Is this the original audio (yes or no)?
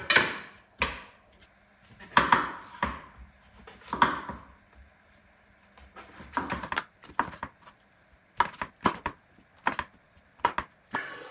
yes